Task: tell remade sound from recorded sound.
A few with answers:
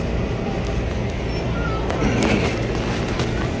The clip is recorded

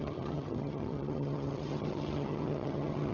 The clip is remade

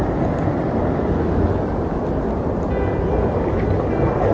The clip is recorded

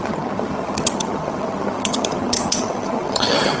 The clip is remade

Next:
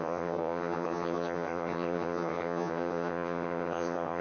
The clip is remade